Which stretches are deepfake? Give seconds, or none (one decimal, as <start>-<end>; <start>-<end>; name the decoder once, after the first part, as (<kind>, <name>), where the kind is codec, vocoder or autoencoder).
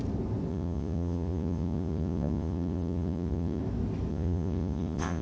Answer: 0.5-3.6 (vocoder, Vocos); 4.1-5.2